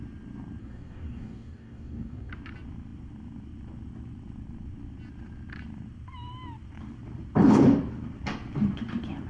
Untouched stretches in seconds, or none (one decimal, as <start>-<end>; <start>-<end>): 0.0-0.6; 2.3-9.3